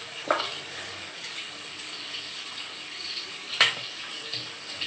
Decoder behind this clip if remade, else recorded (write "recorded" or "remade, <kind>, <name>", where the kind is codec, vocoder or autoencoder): remade, codec, DAC